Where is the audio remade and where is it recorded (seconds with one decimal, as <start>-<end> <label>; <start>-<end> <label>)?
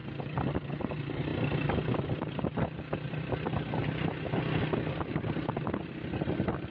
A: 0.0-3.8 remade; 3.8-4.6 recorded; 4.6-6.7 remade